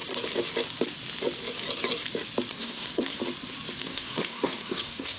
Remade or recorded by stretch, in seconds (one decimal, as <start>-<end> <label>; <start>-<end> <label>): 0.0-2.5 recorded; 2.5-3.2 remade; 3.2-3.8 recorded; 3.8-5.2 remade